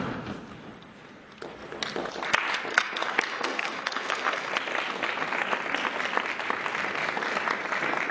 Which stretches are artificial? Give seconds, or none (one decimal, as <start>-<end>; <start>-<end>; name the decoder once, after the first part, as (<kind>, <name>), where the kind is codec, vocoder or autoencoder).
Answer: 2.7-4.5 (codec, SNAC)